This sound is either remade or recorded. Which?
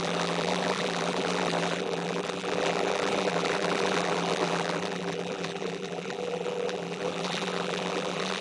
remade